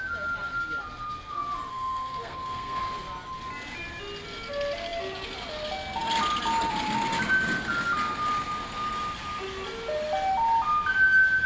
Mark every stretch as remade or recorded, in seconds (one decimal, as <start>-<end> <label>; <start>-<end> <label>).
0.0-1.7 recorded; 1.7-2.8 remade; 2.8-11.5 recorded